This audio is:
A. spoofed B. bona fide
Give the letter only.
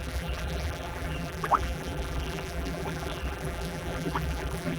A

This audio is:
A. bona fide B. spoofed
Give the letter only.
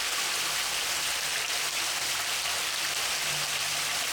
A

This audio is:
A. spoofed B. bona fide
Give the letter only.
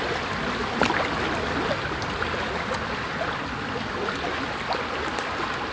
B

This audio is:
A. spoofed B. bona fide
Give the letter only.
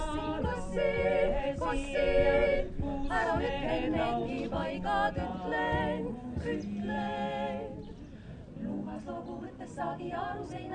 B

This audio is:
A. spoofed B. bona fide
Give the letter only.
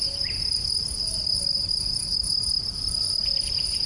A